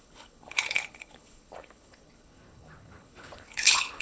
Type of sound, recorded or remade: remade